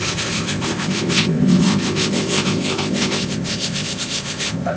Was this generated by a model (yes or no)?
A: yes